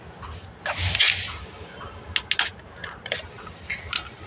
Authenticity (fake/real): real